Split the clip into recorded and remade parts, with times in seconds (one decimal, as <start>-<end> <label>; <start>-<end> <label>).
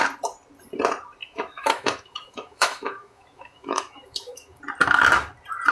0.0-1.2 recorded; 1.2-4.6 remade; 4.6-5.7 recorded